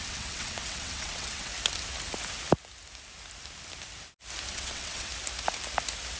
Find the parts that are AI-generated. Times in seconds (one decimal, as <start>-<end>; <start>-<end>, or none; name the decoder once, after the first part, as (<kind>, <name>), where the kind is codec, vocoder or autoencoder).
0.0-1.5 (vocoder, WaveNeXt); 4.5-5.1